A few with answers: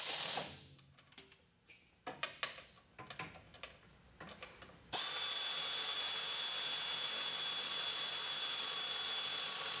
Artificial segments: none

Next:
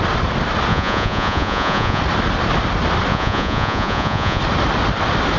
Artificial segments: 0.7-2.0 (vocoder, Vocos); 3.1-4.4